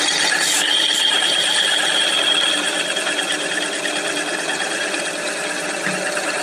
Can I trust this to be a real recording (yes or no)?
yes